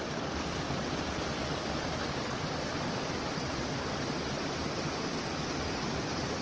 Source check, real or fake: fake